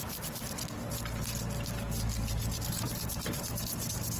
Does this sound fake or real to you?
real